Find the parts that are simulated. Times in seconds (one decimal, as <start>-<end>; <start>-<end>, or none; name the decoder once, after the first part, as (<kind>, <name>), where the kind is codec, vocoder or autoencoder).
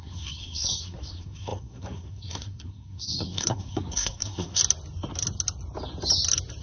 0.0-4.6 (codec, SNAC)